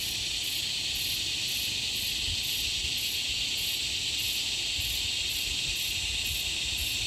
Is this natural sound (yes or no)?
yes